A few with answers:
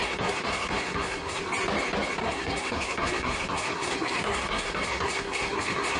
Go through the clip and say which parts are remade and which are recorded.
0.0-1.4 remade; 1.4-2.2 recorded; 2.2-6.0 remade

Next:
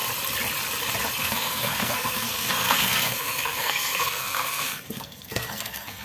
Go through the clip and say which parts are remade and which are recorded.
0.0-1.2 recorded; 1.2-6.0 remade

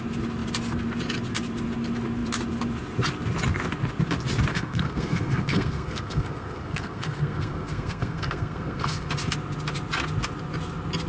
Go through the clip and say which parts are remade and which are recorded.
0.0-4.5 recorded; 4.5-9.1 remade; 9.1-11.1 recorded

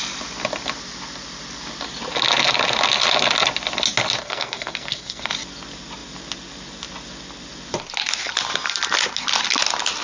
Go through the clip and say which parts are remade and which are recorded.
0.0-4.2 recorded; 4.2-5.3 remade; 5.3-10.0 recorded

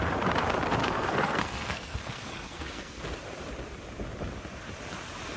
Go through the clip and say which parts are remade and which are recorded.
0.0-0.8 recorded; 0.8-3.0 remade; 3.0-5.4 recorded

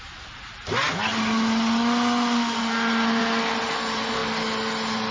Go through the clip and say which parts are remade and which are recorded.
0.0-5.1 recorded